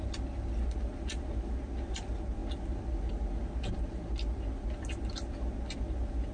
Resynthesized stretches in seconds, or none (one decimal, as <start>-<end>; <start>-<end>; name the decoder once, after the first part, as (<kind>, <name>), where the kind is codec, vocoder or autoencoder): none